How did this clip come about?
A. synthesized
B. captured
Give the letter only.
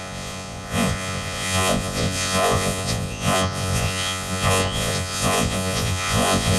A